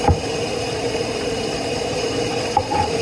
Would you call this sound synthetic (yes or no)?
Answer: yes